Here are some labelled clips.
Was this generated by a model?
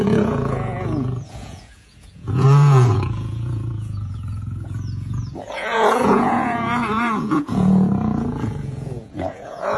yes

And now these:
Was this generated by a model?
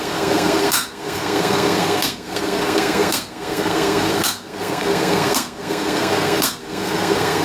yes